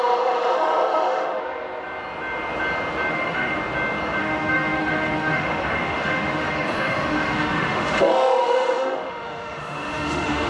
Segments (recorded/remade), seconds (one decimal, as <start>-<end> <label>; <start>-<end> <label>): 0.0-1.4 remade; 1.4-3.1 recorded; 3.1-3.6 remade; 3.6-4.2 recorded; 4.2-10.5 remade